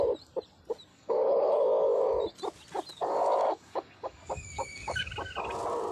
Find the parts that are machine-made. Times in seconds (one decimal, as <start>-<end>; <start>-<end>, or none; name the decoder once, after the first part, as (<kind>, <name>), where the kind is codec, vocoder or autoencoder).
0.9-2.0 (codec, DAC); 2.9-5.1